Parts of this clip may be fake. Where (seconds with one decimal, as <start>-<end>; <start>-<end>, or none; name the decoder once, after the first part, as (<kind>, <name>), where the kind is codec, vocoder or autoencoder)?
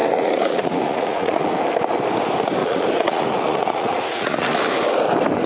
0.0-1.6 (vocoder, Vocos); 2.6-4.6